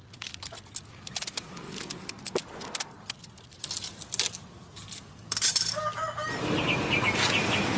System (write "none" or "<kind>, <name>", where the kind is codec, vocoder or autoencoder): none